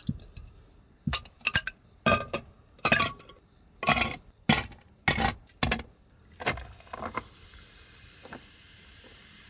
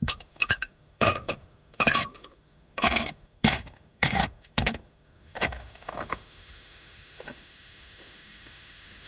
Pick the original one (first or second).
first